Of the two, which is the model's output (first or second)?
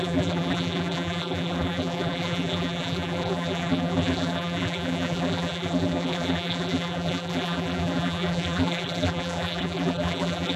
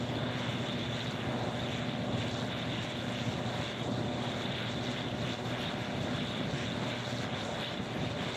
first